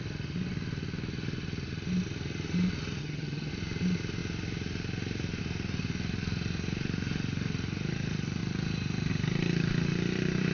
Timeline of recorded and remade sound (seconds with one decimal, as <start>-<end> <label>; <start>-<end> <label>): 0.0-3.0 recorded; 3.0-3.5 remade; 3.5-10.5 recorded